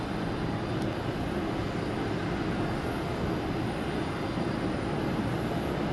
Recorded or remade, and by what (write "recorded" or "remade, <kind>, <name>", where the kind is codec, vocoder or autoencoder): recorded